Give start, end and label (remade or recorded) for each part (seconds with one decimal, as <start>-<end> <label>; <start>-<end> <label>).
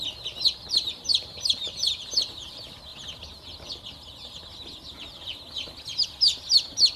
0.0-1.1 recorded; 1.1-2.1 remade; 2.1-7.0 recorded